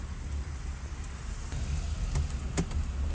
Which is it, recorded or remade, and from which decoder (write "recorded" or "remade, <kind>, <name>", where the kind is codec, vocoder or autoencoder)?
recorded